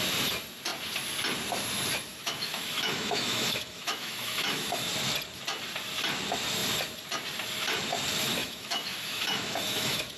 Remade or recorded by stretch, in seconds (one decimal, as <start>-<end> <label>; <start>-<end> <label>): 0.0-2.1 recorded; 2.1-4.9 remade; 4.9-8.4 recorded; 8.4-10.2 remade